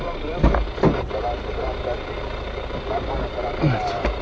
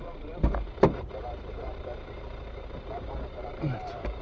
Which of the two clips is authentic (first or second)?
first